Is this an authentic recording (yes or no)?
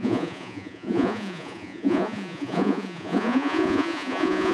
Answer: no